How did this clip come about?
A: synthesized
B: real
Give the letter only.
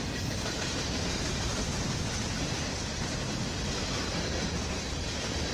B